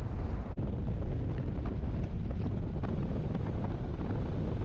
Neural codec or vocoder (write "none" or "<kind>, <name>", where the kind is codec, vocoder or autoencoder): none